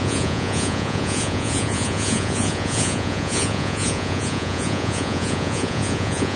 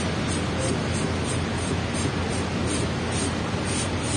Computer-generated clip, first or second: first